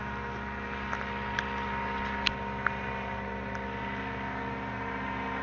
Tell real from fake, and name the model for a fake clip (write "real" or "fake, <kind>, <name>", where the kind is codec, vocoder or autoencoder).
real